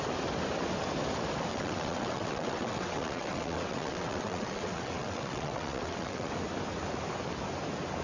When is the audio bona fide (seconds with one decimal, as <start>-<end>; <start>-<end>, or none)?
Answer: 0.0-1.5; 6.3-8.0